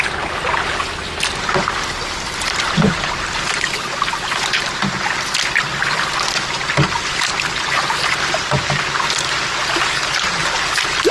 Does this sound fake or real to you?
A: real